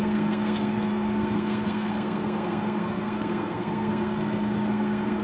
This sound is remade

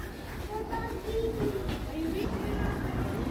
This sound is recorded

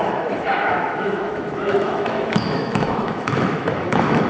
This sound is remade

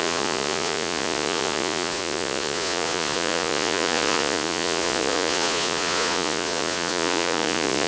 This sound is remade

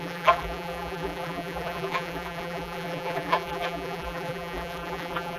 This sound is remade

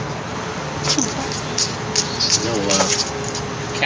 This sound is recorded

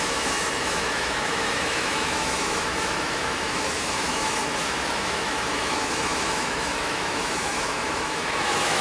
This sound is remade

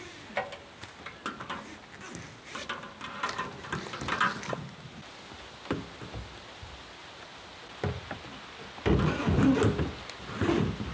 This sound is recorded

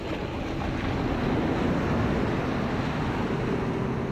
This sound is recorded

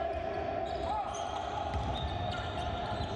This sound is remade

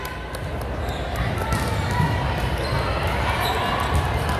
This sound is recorded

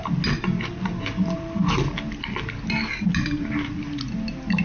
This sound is recorded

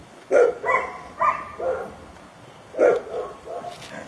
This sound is recorded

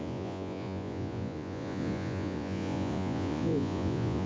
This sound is remade